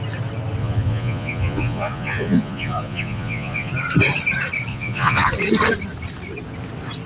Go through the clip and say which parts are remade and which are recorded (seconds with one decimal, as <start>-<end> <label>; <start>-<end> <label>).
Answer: 0.0-0.6 recorded; 0.6-3.7 remade; 3.7-4.7 recorded; 4.7-5.3 remade; 5.3-7.1 recorded

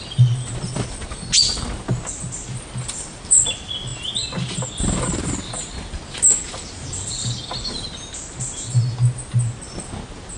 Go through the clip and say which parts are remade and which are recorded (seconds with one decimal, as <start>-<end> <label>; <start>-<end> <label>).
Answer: 0.0-10.4 recorded

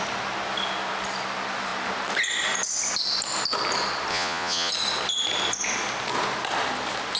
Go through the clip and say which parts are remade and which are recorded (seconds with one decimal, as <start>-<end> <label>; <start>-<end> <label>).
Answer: 0.0-4.1 recorded; 4.1-4.7 remade; 4.7-7.2 recorded

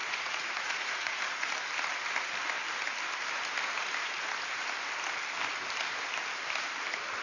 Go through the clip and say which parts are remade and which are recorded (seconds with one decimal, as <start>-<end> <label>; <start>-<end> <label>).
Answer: 0.0-1.5 remade; 1.5-7.2 recorded

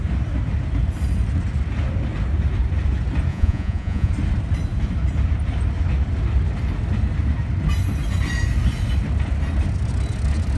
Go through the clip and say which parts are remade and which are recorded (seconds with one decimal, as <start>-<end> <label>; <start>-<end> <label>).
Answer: 0.0-3.3 recorded; 3.3-4.1 remade; 4.1-10.6 recorded